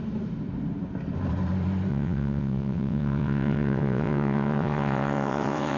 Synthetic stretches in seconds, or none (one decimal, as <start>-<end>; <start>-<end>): 1.9-5.8

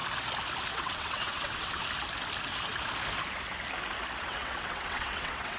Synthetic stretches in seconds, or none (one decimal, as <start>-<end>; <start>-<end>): 0.7-1.8; 4.2-5.6

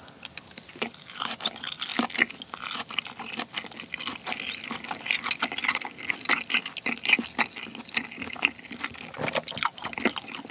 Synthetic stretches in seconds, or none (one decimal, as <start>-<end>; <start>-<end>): none

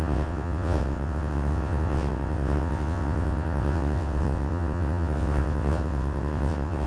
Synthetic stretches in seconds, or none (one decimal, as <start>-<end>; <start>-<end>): 0.0-6.9

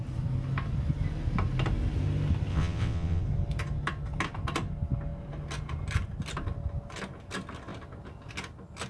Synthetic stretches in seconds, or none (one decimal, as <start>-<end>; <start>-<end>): 2.5-3.2

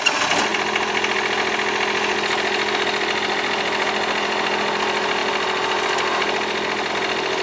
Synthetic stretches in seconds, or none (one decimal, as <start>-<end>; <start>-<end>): none

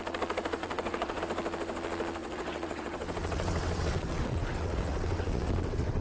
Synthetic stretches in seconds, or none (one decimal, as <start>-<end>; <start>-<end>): 0.6-1.2; 2.2-6.0